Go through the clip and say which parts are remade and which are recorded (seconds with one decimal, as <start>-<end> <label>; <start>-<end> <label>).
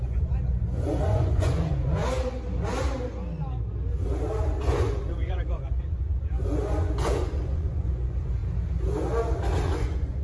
0.0-2.0 remade; 2.0-4.6 recorded; 4.6-8.4 remade; 8.4-9.6 recorded; 9.6-10.2 remade